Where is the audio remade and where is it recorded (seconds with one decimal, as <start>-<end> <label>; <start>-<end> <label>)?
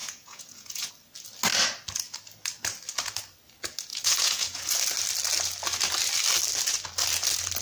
0.0-0.9 remade; 0.9-3.9 recorded; 3.9-4.7 remade; 4.7-7.6 recorded